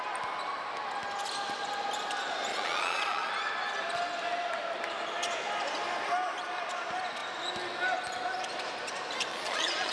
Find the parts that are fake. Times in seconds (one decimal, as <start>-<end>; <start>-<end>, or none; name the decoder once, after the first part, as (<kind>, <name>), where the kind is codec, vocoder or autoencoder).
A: 2.5-3.3 (vocoder, Vocos); 9.3-9.9